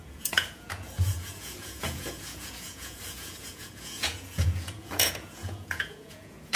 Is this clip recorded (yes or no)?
no